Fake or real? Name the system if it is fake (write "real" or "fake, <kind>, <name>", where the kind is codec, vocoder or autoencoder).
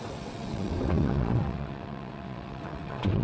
fake, vocoder, WaveNeXt